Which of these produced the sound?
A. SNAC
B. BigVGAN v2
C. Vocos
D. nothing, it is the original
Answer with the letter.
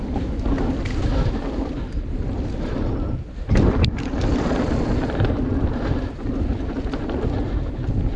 D